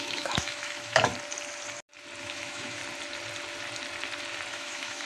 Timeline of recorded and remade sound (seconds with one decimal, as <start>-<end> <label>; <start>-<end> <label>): 0.0-1.1 remade; 1.1-2.2 recorded; 2.2-2.8 remade; 2.8-4.5 recorded; 4.5-5.1 remade